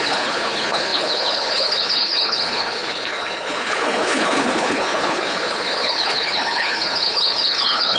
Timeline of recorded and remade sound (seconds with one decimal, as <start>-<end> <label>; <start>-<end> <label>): 0.0-8.0 remade